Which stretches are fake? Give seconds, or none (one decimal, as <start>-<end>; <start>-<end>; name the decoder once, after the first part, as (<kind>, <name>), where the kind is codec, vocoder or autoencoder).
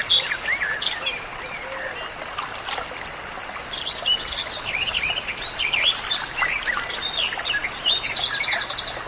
none